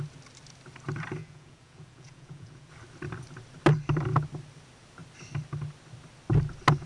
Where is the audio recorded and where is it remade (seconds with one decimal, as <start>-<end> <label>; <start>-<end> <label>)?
0.0-1.2 recorded; 1.2-2.7 remade; 2.7-6.9 recorded